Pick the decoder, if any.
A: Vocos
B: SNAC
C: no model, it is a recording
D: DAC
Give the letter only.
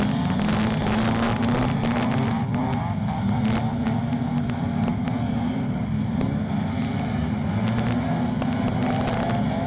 C